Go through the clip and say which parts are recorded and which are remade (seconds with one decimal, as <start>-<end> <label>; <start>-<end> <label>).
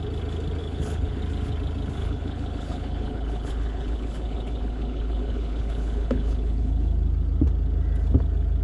0.0-0.6 recorded; 0.6-1.2 remade; 1.2-2.0 recorded; 2.0-6.7 remade; 6.7-8.6 recorded